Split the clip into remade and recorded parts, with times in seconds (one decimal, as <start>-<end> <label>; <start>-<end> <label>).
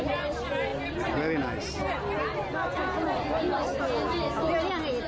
0.0-5.1 recorded